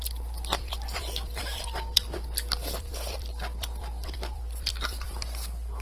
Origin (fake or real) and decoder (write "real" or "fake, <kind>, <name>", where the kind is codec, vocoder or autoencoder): fake, vocoder, BigVGAN v2